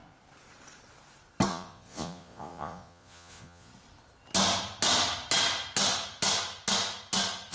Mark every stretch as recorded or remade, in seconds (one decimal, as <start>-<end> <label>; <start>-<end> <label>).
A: 0.0-1.5 recorded; 1.5-3.7 remade; 3.7-7.5 recorded